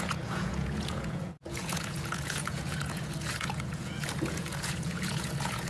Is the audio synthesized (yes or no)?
yes